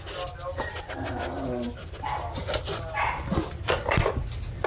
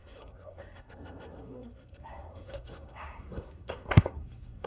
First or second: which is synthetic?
second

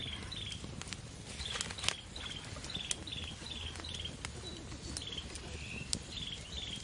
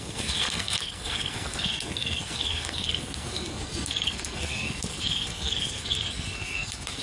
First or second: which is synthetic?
second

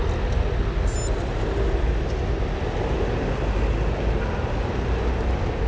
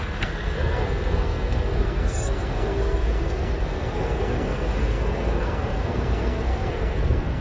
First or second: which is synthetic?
second